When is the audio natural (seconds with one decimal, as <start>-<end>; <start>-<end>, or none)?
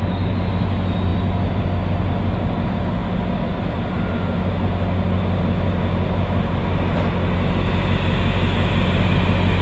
0.0-9.6